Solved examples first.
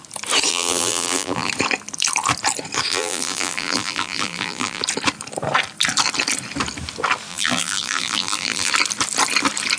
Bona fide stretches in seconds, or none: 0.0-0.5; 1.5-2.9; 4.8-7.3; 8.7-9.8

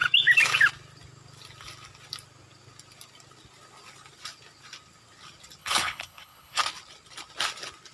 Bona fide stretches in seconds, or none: 0.0-5.6; 6.6-7.9

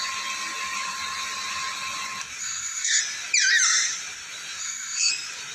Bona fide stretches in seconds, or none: 0.0-2.4; 3.0-4.6; 5.1-5.5

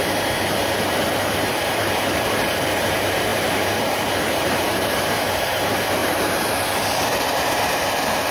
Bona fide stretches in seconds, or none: 6.0-7.1